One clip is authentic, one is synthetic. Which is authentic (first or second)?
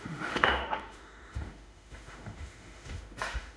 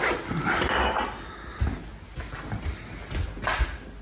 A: second